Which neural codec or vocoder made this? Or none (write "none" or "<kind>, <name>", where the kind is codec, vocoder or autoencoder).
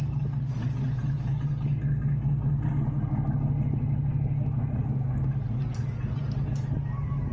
none